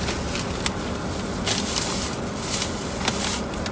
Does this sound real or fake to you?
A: real